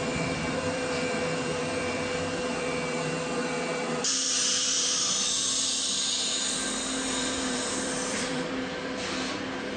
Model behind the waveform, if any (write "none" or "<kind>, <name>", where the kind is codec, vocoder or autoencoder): vocoder, BigVGAN v2